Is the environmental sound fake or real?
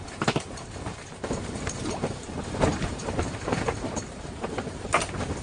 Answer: fake